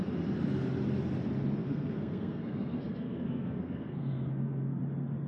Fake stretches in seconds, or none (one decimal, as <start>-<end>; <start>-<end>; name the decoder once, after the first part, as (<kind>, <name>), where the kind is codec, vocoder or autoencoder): 1.6-4.8 (codec, SNAC)